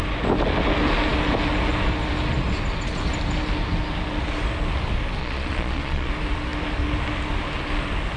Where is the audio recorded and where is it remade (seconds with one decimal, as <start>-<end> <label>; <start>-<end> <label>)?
0.0-5.2 recorded; 5.2-6.1 remade; 6.1-8.2 recorded